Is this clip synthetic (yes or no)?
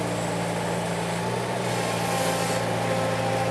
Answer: no